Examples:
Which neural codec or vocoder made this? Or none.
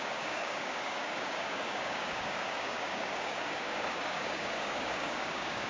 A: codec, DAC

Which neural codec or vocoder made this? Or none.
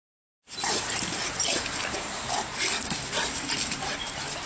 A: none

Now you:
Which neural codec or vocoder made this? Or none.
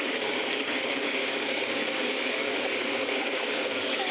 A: codec, DAC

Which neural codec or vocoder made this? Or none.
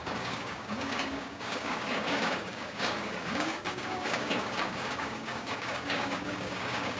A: codec, DAC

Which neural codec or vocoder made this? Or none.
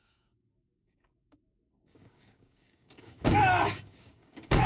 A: codec, DAC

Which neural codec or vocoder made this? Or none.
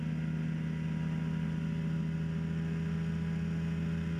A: none